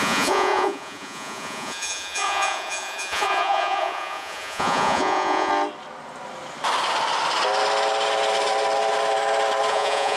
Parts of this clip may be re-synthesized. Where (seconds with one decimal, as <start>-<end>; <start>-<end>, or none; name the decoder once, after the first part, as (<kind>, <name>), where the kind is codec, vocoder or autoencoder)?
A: 0.0-5.5 (vocoder, Vocos); 9.7-10.2